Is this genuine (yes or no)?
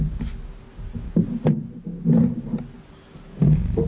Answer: yes